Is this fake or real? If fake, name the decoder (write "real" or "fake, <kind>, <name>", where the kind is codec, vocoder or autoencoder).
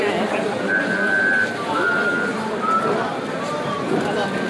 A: real